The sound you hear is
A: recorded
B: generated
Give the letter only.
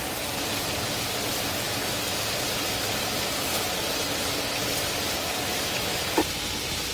A